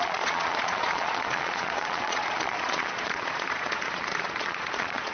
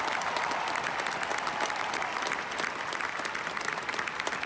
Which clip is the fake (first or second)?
first